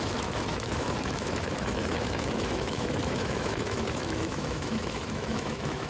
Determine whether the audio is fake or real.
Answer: fake